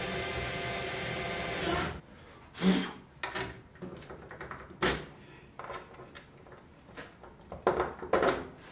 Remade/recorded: recorded